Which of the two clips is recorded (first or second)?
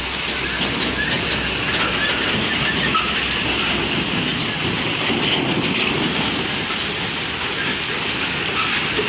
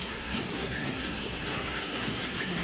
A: first